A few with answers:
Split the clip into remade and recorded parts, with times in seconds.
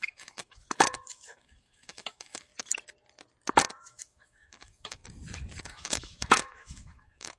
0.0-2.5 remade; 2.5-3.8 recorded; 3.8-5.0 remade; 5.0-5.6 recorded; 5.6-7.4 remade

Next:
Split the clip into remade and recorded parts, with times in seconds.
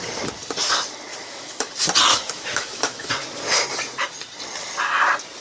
0.0-1.1 recorded; 1.1-1.7 remade; 1.7-2.1 recorded; 2.1-3.1 remade; 3.1-5.4 recorded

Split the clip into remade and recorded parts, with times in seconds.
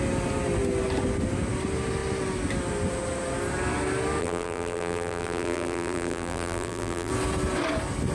0.0-4.2 recorded; 4.2-7.1 remade; 7.1-8.1 recorded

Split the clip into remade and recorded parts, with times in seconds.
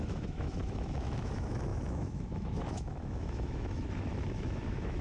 0.0-5.0 remade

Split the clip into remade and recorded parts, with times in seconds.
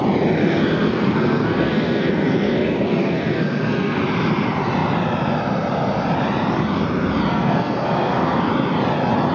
0.0-0.4 recorded; 0.4-4.0 remade; 4.0-7.3 recorded; 7.3-8.5 remade; 8.5-9.3 recorded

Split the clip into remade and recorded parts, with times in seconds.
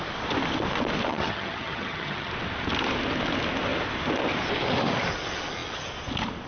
0.0-1.1 recorded; 1.1-2.3 remade; 2.3-6.5 recorded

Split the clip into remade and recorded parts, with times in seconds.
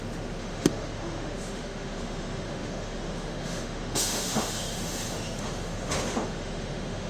0.0-7.1 remade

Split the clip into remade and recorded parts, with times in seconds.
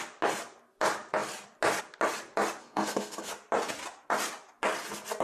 0.0-2.6 recorded; 2.6-3.3 remade; 3.3-5.2 recorded